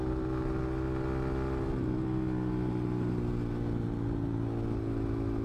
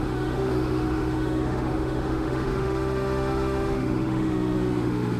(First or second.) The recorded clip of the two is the first